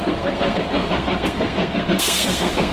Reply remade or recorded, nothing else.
remade